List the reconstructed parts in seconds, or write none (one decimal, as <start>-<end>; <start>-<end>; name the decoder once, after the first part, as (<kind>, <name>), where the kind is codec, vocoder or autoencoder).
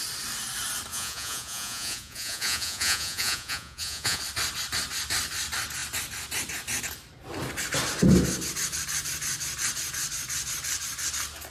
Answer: 0.9-4.2 (vocoder, Vocos)